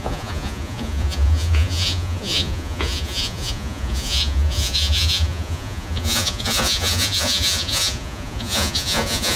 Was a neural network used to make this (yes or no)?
yes